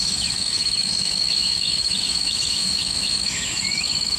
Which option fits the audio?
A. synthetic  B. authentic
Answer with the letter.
A